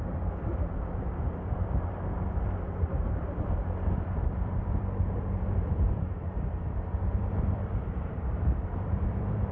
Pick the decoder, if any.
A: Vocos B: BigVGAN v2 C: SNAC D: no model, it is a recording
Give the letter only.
B